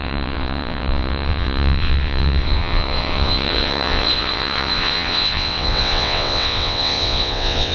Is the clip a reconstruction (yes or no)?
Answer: yes